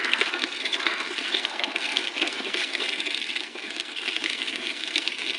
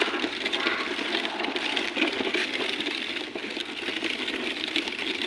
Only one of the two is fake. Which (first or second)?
first